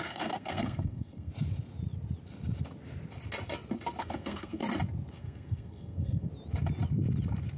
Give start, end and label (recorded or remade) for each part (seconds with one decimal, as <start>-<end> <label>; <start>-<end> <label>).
0.0-1.3 remade; 1.3-4.0 recorded; 4.0-4.6 remade; 4.6-5.1 recorded; 5.1-6.3 remade; 6.3-7.6 recorded